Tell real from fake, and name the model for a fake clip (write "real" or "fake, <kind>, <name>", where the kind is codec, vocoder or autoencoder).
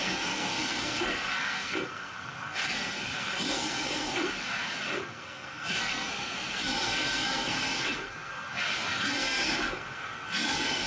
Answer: fake, codec, SNAC